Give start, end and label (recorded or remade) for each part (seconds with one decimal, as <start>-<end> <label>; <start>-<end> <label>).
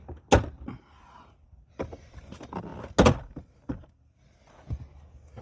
0.0-5.4 recorded